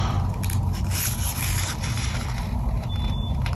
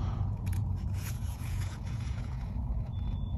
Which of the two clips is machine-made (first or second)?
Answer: second